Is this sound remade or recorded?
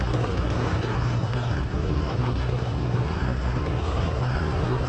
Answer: remade